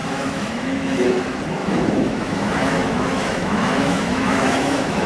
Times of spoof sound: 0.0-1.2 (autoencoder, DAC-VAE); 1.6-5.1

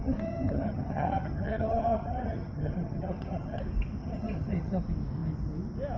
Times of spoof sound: 0.0-3.6 (vocoder, HiFi-GAN); 4.0-4.8